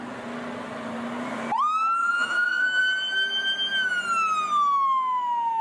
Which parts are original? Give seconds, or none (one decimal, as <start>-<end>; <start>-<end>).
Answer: 0.0-2.0; 2.8-5.6